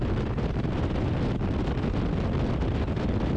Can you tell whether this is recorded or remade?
recorded